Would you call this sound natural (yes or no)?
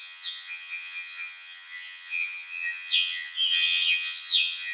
no